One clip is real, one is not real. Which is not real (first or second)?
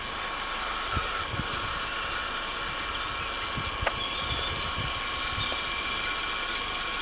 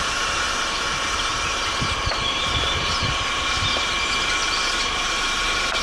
second